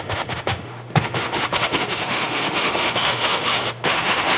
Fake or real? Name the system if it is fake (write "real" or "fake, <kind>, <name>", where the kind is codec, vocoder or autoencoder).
fake, autoencoder, DAC-VAE